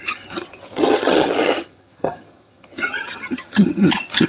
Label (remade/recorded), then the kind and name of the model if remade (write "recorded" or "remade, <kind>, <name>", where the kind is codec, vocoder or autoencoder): remade, vocoder, HiFi-GAN